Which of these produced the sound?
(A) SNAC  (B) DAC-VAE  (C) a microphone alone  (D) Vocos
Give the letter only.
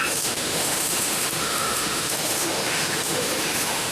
B